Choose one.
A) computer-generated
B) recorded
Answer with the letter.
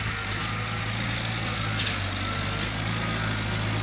B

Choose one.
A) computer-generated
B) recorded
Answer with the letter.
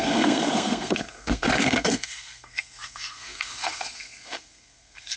A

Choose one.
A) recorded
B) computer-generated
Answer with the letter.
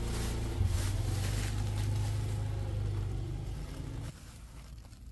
A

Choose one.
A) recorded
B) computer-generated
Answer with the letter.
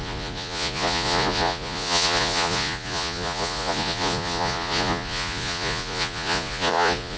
B